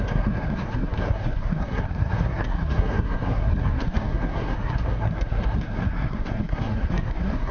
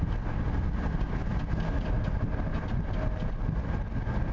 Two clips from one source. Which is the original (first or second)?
second